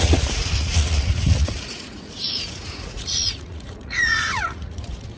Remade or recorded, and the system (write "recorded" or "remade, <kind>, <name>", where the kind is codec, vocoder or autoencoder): remade, vocoder, Vocos